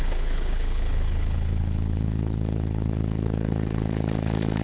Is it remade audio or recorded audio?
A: remade